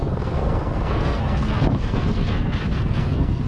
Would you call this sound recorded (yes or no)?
no